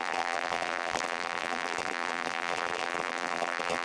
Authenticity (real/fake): fake